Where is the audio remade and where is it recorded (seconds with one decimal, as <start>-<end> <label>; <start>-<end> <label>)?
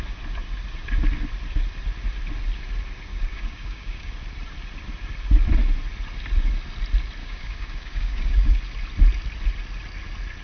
0.0-3.1 recorded; 3.1-4.1 remade; 4.1-7.2 recorded; 7.2-8.6 remade; 8.6-10.4 recorded